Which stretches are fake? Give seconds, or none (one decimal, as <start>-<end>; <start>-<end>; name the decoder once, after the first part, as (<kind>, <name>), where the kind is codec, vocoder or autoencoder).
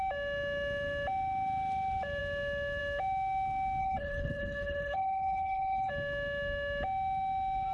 3.8-5.9 (codec, HILCodec)